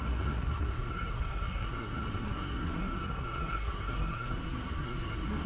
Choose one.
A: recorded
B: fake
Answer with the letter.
B